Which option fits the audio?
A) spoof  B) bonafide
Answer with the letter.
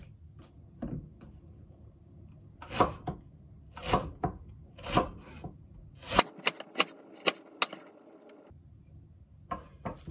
B